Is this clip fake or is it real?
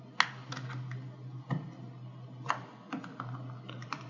real